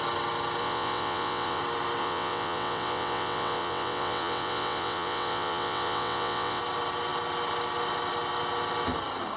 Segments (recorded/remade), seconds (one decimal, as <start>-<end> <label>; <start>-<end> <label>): 0.0-0.6 recorded; 0.6-1.6 remade; 1.6-2.0 recorded; 2.0-6.6 remade; 6.6-9.4 recorded